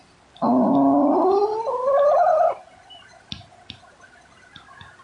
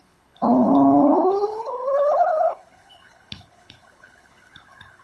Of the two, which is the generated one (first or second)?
second